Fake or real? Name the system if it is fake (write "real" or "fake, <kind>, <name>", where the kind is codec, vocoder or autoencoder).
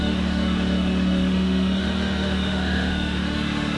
fake, autoencoder, DAC-VAE